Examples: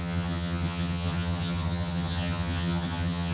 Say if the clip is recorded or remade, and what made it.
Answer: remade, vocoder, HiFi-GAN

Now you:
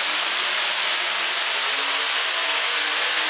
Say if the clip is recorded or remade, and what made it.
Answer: recorded